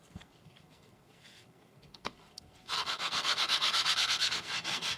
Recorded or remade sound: remade